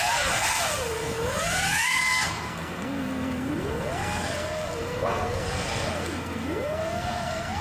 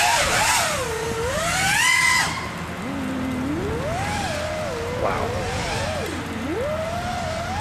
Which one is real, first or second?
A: second